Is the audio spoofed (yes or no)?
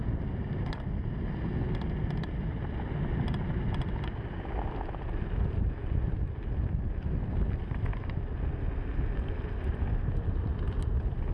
no